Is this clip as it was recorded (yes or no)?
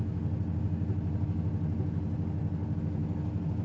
yes